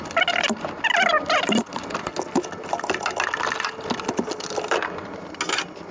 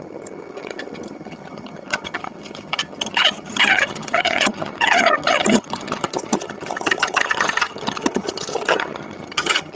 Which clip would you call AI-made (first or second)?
second